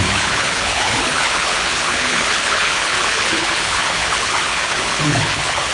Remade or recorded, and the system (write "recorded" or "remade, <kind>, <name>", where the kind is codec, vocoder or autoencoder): remade, codec, HILCodec